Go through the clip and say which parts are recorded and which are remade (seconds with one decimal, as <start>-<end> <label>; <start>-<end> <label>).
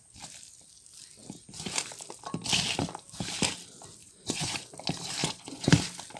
0.0-4.0 recorded; 4.0-4.6 remade; 4.6-5.2 recorded; 5.2-5.7 remade; 5.7-6.2 recorded